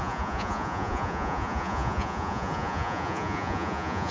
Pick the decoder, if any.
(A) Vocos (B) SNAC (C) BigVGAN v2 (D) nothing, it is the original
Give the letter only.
A